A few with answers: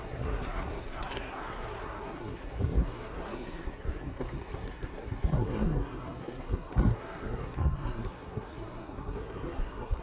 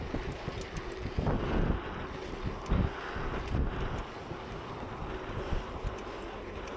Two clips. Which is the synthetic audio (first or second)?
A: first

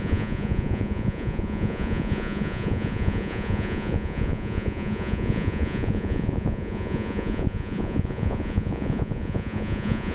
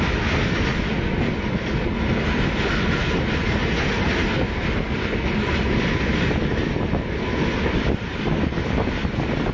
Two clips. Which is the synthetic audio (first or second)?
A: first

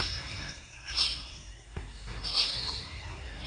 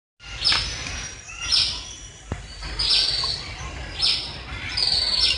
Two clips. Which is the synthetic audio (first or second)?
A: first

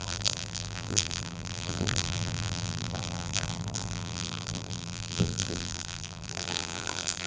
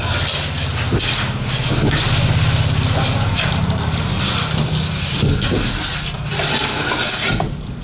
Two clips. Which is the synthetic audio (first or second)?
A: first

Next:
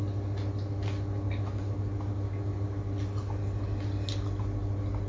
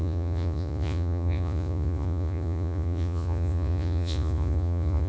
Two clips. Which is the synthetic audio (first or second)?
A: second